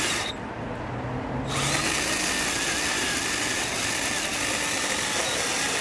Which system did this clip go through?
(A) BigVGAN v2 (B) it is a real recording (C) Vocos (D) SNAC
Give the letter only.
B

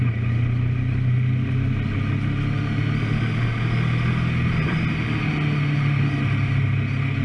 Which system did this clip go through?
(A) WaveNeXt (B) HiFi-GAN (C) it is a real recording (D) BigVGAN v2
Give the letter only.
C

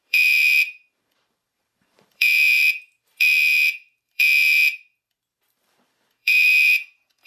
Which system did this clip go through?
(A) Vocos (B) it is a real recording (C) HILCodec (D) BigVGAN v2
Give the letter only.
D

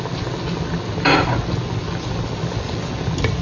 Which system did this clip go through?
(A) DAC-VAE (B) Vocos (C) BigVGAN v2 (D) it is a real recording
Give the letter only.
D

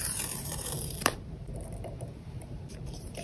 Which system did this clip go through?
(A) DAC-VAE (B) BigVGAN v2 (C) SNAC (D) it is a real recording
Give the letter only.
B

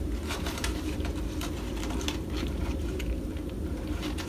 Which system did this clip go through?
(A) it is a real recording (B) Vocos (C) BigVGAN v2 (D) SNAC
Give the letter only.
C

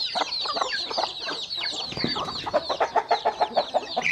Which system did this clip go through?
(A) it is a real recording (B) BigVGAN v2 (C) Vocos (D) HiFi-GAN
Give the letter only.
B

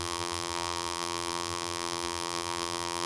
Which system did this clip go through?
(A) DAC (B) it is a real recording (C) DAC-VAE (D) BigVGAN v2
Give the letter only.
D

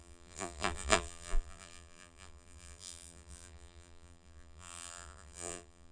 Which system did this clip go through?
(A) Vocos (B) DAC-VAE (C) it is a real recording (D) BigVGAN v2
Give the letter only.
D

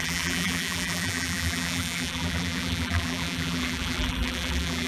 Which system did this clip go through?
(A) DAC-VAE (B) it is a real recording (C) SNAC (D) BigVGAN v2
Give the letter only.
D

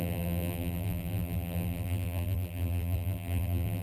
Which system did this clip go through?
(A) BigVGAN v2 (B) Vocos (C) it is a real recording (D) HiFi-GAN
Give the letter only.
A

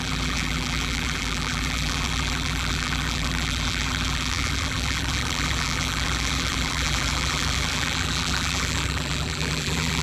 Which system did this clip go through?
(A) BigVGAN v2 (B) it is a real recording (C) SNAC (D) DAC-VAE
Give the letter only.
A